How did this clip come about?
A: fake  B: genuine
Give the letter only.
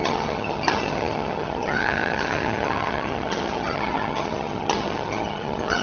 A